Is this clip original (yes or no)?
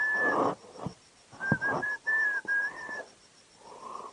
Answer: no